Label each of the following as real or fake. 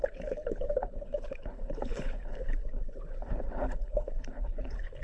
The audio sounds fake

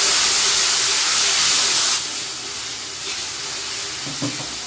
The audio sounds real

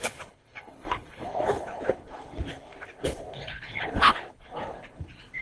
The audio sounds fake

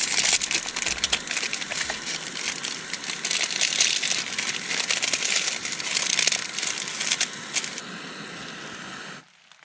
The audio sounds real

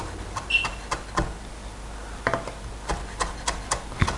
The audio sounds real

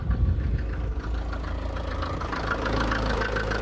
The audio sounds real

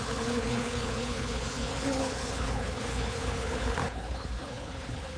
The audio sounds fake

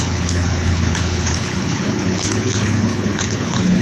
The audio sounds fake